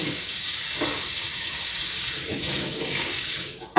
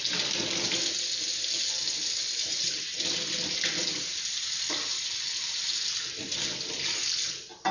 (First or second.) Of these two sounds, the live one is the second